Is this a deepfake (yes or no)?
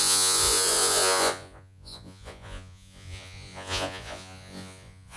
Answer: yes